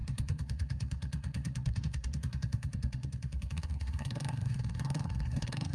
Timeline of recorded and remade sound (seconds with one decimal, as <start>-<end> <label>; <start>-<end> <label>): 0.0-5.7 remade